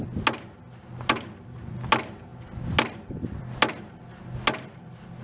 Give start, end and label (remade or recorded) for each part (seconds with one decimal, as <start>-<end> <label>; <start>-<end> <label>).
0.0-5.2 recorded